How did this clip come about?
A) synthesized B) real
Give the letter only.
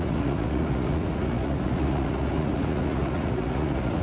A